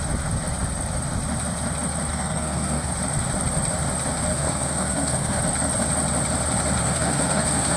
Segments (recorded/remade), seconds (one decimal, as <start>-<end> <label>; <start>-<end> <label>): 0.0-2.1 recorded; 2.1-2.9 remade; 2.9-4.3 recorded; 4.3-5.4 remade; 5.4-6.8 recorded; 6.8-7.8 remade